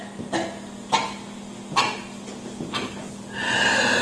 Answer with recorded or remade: recorded